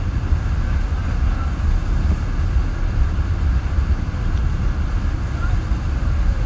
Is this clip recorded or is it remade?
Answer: recorded